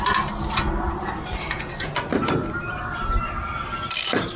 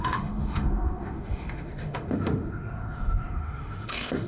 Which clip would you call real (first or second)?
first